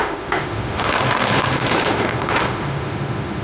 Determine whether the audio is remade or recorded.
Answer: remade